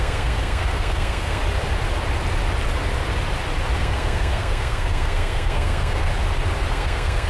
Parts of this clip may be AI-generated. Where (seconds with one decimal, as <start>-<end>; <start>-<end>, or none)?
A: 0.0-1.4; 3.8-6.1; 6.7-7.3